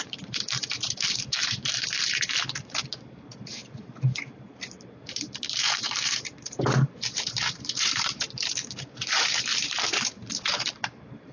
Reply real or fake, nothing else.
fake